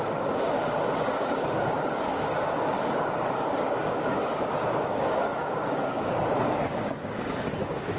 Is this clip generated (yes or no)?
yes